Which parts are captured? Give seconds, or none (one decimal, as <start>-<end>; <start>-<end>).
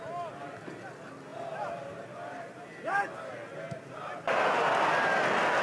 0.0-5.6